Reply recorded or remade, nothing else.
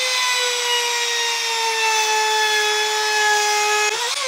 recorded